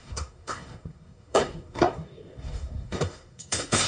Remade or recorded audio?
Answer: remade